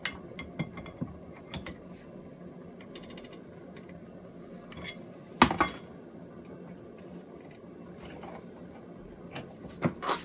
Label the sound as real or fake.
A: real